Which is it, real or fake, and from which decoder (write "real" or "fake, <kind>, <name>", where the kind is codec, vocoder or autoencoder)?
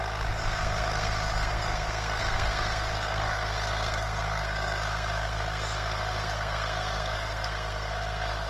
fake, codec, SNAC